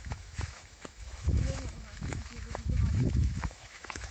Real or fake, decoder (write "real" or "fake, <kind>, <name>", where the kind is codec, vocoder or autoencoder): fake, autoencoder, DAC-VAE